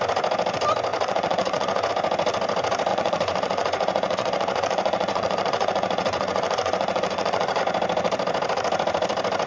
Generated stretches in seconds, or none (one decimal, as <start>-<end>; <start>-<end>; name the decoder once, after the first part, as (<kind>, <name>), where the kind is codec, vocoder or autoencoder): 0.9-1.9 (vocoder, Vocos); 2.9-7.6